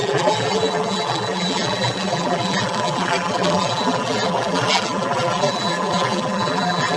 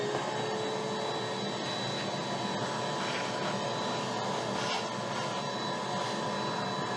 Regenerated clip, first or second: first